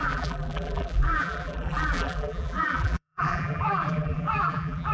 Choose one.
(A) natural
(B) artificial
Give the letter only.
B